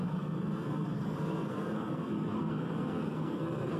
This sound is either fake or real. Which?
fake